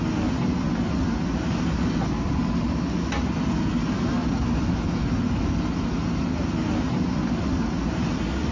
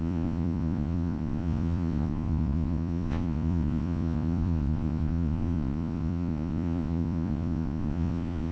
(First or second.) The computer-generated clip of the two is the second